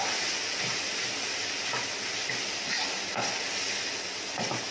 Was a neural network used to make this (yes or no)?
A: no